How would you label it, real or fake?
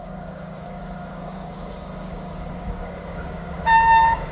fake